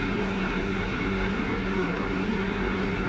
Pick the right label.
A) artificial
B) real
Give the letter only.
A